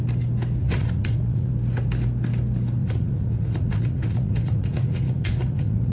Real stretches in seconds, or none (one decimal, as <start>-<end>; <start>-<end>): 0.0-0.6; 1.5-2.8